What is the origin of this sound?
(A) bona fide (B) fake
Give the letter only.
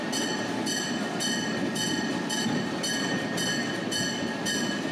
A